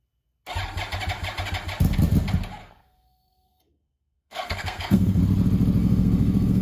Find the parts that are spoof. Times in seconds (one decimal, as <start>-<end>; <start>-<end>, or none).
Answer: 2.6-5.2; 5.8-6.6